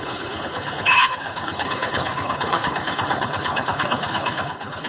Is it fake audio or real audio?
fake